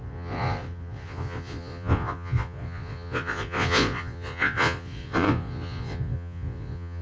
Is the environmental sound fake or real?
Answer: fake